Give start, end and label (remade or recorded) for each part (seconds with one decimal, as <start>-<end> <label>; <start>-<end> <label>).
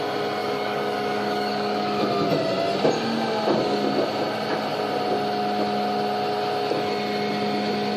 0.0-0.4 recorded; 0.4-2.0 remade; 2.0-8.0 recorded